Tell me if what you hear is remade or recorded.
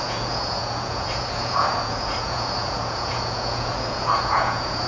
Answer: remade